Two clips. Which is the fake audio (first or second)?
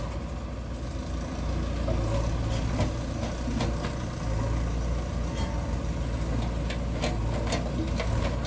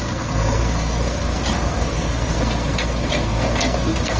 second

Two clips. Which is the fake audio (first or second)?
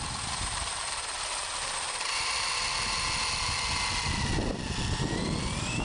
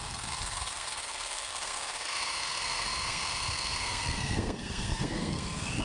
second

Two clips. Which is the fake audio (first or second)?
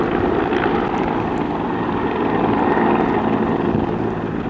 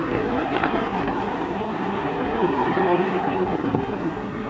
second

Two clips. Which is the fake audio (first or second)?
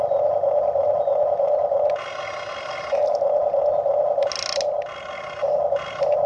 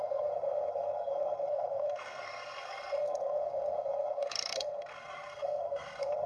second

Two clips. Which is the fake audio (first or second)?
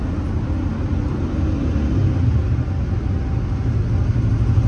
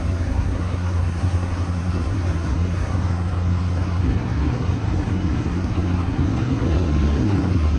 second